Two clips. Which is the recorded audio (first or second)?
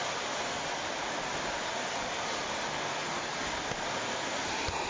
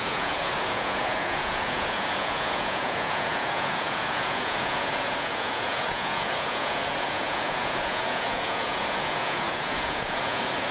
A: first